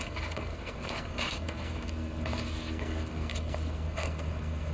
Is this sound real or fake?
fake